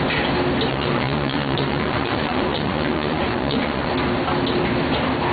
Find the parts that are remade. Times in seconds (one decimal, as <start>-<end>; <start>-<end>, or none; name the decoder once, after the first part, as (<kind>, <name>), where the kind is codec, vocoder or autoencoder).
0.7-3.9 (vocoder, Vocos)

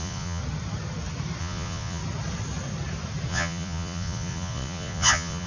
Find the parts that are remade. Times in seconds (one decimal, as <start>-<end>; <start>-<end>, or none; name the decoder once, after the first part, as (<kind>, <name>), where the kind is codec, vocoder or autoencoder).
0.0-0.4 (vocoder, Vocos); 1.4-2.0; 3.3-5.5

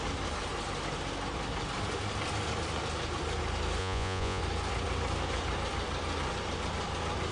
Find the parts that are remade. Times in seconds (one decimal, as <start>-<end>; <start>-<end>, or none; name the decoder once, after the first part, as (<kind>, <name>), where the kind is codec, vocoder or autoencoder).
3.8-4.4 (vocoder, Vocos)